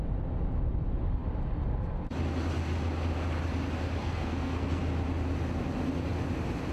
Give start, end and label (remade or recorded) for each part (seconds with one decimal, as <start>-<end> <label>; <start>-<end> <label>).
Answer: 0.0-4.0 recorded; 4.0-4.8 remade; 4.8-6.7 recorded